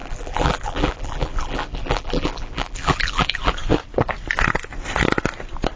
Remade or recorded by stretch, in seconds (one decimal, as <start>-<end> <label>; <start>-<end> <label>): 0.0-3.5 remade; 3.5-5.8 recorded